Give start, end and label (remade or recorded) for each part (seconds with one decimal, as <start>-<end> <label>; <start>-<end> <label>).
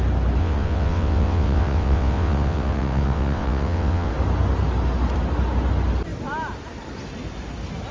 0.0-0.4 recorded; 0.4-4.1 remade; 4.1-7.9 recorded